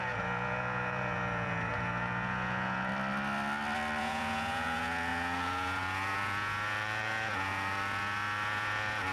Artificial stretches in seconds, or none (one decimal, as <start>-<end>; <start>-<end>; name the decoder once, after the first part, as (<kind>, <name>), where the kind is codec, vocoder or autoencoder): 0.0-2.9 (vocoder, Vocos); 4.0-9.1